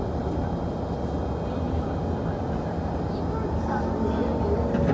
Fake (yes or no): no